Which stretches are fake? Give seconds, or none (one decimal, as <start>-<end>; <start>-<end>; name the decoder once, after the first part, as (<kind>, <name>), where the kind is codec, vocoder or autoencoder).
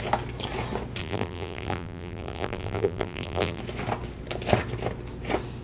1.0-3.6 (vocoder, BigVGAN v2)